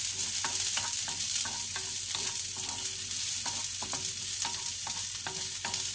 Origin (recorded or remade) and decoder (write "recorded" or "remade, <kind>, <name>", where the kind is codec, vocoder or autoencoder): recorded